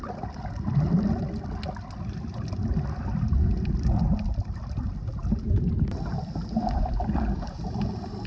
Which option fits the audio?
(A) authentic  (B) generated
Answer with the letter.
A